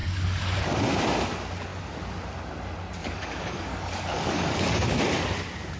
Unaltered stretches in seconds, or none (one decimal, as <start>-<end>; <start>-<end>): 0.6-3.0; 5.0-5.8